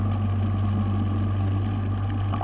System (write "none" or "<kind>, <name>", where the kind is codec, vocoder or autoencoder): none